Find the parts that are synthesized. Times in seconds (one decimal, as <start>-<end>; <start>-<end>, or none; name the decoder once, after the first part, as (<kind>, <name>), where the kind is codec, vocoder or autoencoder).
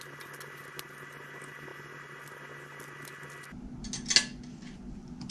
none